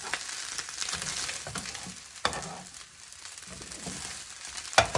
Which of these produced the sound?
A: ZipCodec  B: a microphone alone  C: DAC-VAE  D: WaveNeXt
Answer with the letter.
B